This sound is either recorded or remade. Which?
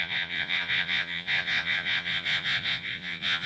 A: remade